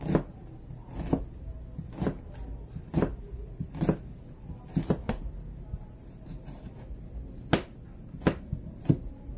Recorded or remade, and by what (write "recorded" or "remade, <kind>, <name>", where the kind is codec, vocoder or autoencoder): recorded